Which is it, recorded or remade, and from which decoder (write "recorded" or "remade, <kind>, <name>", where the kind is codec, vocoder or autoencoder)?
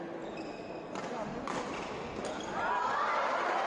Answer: recorded